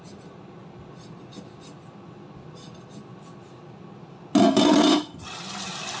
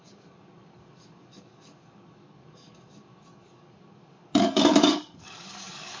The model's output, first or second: second